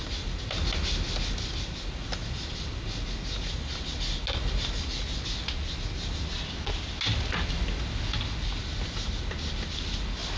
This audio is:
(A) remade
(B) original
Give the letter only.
B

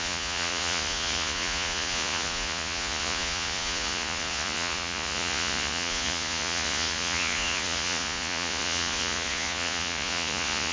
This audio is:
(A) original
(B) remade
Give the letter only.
B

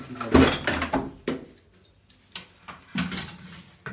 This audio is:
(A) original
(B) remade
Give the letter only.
A